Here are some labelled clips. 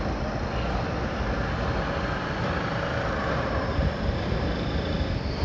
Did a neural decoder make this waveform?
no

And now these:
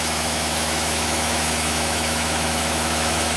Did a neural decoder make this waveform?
yes